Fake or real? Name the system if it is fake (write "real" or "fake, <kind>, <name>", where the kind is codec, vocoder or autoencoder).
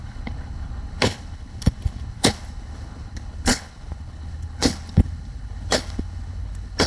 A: fake, codec, HILCodec